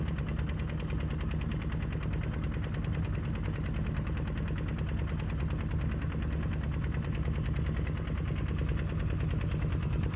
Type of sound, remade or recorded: recorded